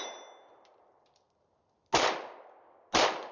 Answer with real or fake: real